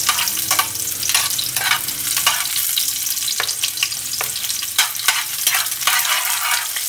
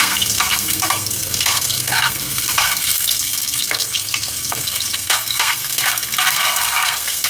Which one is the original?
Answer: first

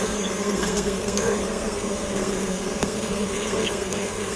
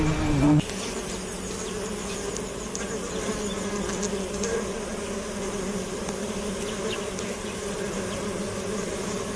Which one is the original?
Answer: second